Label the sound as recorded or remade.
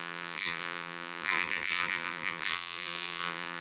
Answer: remade